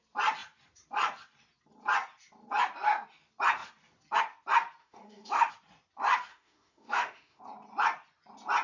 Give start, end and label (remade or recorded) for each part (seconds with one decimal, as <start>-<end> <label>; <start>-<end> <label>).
0.0-4.8 recorded; 4.8-5.5 remade; 5.5-6.3 recorded; 6.3-7.4 remade; 7.4-8.6 recorded